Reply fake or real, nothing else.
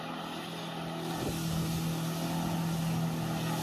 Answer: real